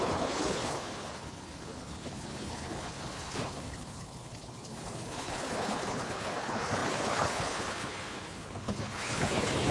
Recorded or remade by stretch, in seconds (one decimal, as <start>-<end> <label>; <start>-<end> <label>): 0.0-9.7 remade